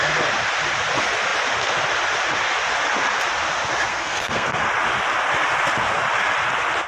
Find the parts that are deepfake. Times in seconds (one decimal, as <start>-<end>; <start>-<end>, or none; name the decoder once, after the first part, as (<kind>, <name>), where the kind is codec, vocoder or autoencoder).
3.9-4.6 (codec, SNAC)